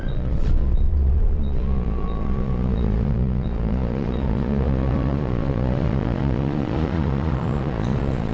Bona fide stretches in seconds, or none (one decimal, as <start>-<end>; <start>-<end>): none

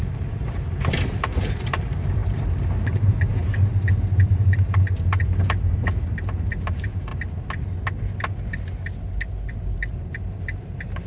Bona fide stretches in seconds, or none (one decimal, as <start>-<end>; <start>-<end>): 3.4-4.3; 7.1-9.5

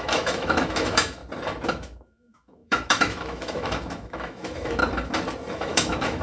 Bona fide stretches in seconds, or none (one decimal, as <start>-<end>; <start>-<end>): 1.2-1.7; 4.8-5.5

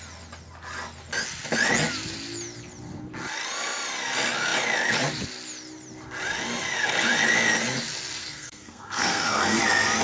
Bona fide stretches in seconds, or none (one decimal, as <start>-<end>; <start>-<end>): 0.0-8.2; 9.6-10.0

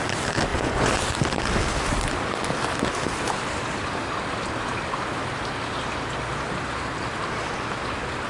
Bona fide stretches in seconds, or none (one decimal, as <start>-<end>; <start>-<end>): 0.0-0.5; 1.0-8.3